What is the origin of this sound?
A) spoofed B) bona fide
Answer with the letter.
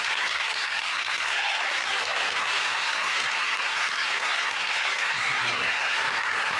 A